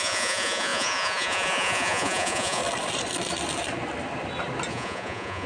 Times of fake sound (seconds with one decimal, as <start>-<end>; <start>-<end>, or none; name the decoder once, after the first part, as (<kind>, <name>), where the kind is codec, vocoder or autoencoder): 0.0-2.6 (vocoder, Vocos); 4.7-5.5